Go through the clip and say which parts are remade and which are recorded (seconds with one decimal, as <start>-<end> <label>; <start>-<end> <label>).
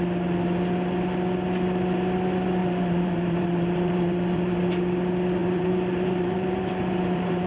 0.0-2.6 recorded; 2.6-4.6 remade; 4.6-5.4 recorded; 5.4-7.5 remade